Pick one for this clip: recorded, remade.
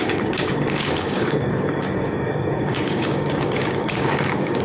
remade